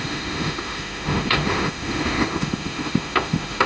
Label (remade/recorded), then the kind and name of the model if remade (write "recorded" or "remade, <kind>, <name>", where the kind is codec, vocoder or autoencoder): remade, autoencoder, DAC-VAE